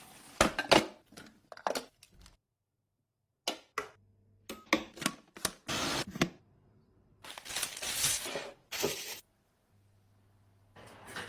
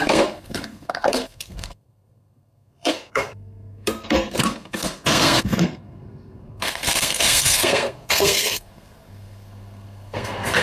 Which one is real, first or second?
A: first